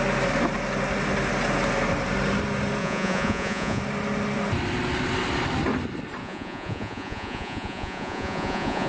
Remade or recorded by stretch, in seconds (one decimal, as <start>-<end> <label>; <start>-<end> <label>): 0.0-2.8 recorded; 2.8-3.8 remade; 3.8-6.2 recorded; 6.2-8.9 remade